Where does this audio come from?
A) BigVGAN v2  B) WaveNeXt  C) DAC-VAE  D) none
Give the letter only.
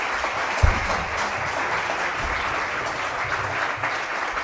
D